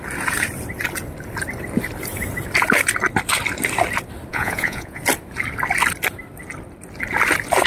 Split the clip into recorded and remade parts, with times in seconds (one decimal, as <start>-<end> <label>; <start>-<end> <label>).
0.0-4.3 recorded; 4.3-5.0 remade; 5.0-7.7 recorded